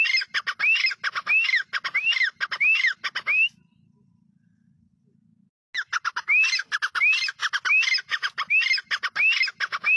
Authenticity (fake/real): real